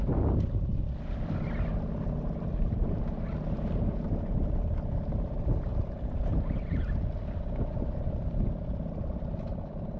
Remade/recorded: recorded